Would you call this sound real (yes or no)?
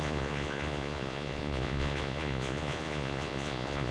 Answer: no